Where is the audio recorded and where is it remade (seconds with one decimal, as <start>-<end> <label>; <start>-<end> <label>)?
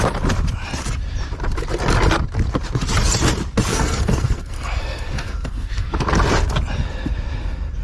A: 0.0-3.7 recorded; 3.7-5.9 remade; 5.9-7.8 recorded